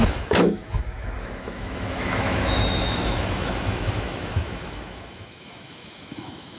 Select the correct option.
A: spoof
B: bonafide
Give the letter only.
A